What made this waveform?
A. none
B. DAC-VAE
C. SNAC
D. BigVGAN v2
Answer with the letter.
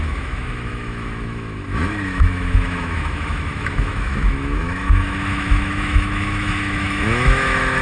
B